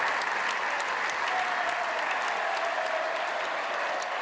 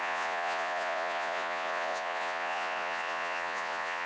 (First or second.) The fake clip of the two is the second